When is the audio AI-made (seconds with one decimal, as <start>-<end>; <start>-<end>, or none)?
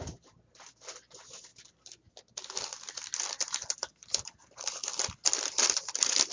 none